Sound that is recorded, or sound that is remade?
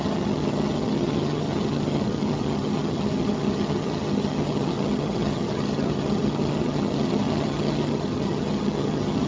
remade